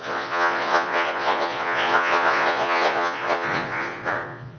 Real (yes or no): no